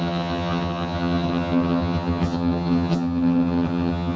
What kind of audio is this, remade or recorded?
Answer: remade